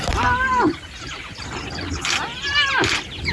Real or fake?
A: real